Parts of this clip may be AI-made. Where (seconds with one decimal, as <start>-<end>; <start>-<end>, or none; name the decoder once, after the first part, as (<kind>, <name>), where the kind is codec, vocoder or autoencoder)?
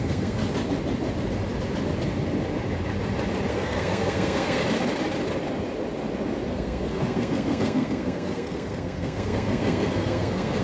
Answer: 0.0-0.4 (codec, SNAC); 3.5-4.6; 6.5-10.6